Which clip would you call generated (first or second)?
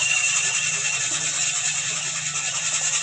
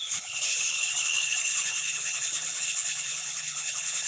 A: second